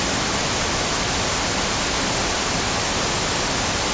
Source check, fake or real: real